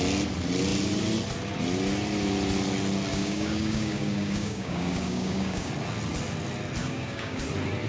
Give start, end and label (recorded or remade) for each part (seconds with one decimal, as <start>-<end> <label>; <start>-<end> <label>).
0.0-3.1 recorded; 3.1-5.7 remade; 5.7-6.8 recorded; 6.8-7.4 remade; 7.4-7.9 recorded